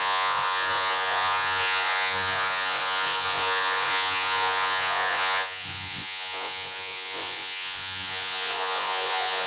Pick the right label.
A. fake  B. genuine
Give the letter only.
A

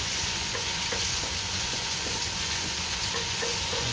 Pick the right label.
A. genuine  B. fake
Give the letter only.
B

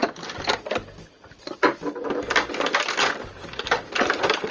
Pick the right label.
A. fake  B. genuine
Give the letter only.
B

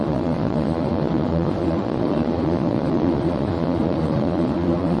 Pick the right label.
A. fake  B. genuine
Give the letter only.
A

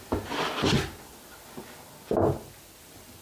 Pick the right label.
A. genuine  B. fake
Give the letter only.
A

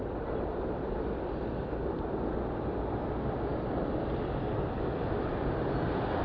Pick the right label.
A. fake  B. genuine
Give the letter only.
B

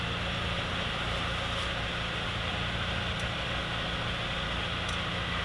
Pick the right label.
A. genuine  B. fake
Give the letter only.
A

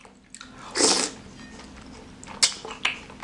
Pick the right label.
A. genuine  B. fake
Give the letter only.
A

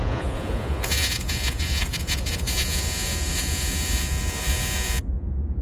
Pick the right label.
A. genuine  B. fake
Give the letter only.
B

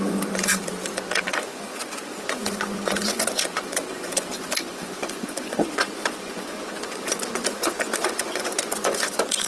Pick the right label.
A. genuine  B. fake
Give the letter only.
B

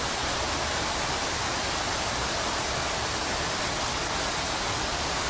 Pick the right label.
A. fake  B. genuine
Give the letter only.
B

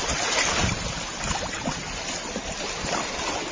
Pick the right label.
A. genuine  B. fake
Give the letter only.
A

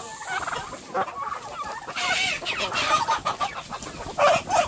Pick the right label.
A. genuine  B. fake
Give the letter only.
A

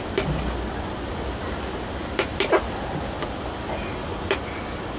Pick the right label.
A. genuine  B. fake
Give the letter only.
A